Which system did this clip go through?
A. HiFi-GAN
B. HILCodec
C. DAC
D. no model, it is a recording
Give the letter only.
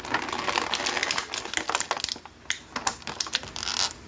D